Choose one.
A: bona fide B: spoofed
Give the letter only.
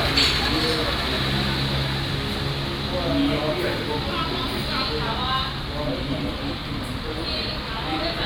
A